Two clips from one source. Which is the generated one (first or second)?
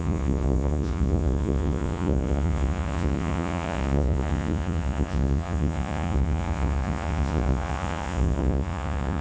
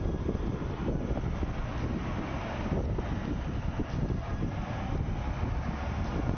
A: first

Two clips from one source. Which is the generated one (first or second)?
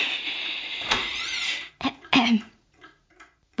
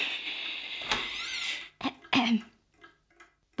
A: first